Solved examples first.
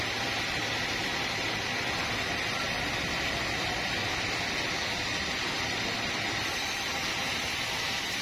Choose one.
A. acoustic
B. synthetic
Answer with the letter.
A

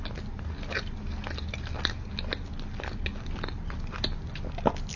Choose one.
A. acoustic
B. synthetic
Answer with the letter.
A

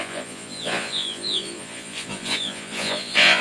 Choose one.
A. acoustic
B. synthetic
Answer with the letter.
B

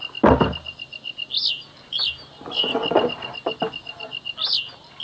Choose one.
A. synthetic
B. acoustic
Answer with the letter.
B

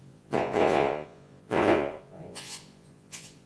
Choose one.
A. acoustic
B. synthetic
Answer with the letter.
B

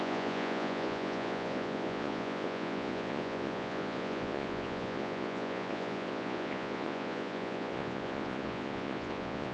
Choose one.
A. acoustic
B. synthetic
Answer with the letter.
B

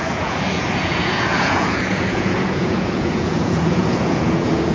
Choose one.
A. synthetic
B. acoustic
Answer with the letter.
A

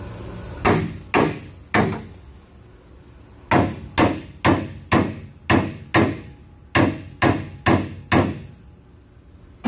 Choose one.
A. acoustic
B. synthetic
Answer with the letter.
A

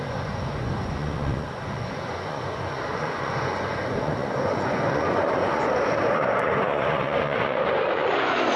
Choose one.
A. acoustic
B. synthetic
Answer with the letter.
B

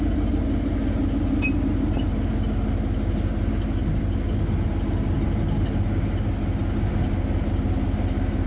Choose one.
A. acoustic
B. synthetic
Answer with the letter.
A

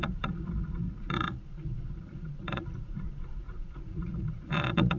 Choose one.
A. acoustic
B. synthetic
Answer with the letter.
B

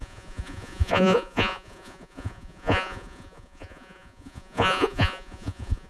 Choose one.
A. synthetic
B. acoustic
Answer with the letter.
A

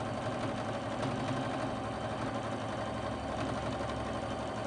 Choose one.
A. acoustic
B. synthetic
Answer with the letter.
A